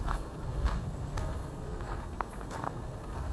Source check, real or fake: fake